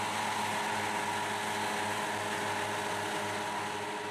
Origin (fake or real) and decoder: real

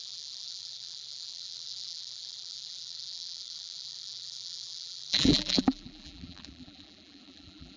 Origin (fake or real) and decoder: fake, vocoder, BigVGAN v2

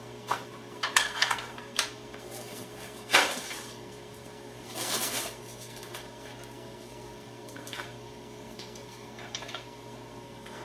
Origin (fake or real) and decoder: fake, codec, SNAC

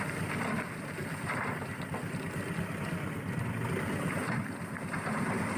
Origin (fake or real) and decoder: real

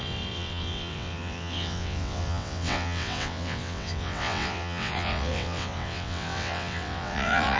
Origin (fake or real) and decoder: fake, vocoder, WaveNeXt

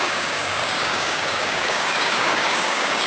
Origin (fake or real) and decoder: fake, codec, DAC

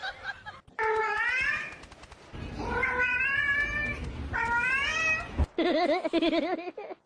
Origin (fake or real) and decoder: real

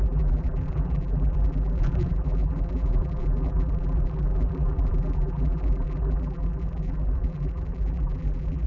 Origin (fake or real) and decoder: fake, vocoder, BigVGAN v2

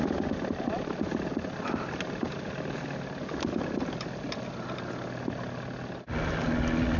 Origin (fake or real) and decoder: real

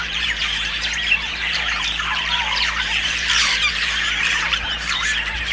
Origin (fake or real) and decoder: fake, vocoder, BigVGAN v2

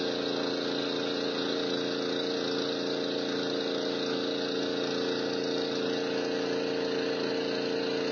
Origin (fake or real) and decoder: real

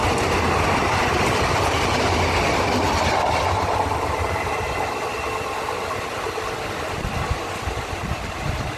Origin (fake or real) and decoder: real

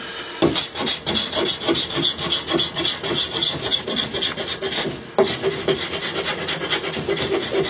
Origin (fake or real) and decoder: real